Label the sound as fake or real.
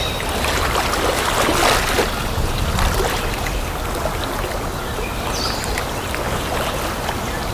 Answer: real